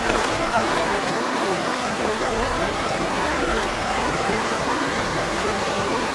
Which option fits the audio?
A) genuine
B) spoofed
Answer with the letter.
B